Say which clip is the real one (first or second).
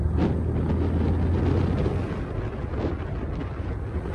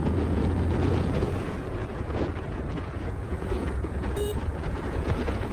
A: first